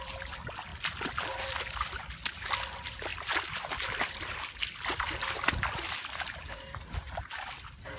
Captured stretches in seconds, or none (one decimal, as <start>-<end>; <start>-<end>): 0.0-0.7; 2.0-3.1; 5.1-8.0